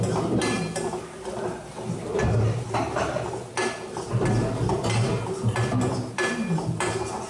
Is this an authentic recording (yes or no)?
yes